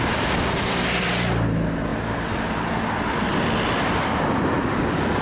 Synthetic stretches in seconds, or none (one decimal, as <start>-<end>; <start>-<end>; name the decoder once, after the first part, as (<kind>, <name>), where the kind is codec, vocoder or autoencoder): none

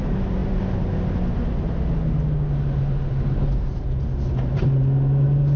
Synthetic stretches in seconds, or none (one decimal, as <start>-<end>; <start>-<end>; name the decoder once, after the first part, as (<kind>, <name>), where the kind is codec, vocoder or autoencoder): none

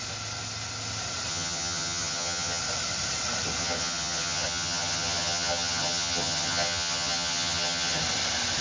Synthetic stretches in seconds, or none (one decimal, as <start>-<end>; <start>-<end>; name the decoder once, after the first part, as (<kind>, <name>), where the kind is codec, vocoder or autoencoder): 1.3-2.6 (vocoder, HiFi-GAN); 3.6-8.0

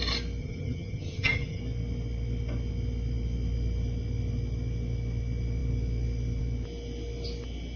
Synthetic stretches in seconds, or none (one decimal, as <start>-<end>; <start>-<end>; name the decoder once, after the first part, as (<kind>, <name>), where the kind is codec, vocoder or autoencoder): 0.4-1.6 (vocoder, HiFi-GAN)